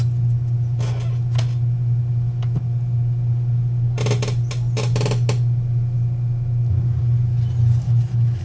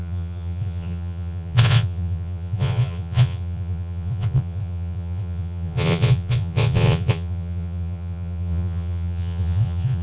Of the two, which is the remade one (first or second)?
second